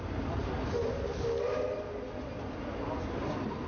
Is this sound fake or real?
real